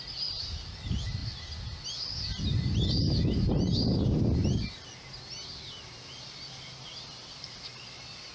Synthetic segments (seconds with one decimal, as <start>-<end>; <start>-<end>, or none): none